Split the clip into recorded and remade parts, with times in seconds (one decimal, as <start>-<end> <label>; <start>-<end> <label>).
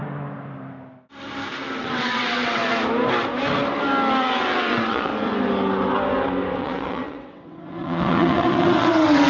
0.0-1.8 recorded; 1.8-2.6 remade; 2.6-4.2 recorded; 4.2-5.1 remade; 5.1-6.6 recorded; 6.6-9.3 remade